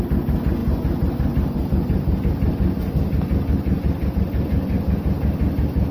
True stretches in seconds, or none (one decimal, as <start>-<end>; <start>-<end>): 0.0-5.9